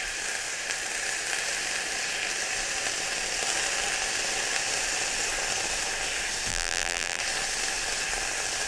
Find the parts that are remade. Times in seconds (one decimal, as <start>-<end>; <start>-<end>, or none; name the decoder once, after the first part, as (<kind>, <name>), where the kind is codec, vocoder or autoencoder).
6.5-7.2 (vocoder, BigVGAN v2)